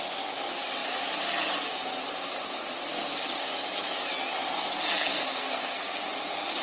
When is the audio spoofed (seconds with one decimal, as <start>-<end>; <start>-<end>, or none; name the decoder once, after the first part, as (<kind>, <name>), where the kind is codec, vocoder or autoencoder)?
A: 5.1-5.8 (codec, SNAC)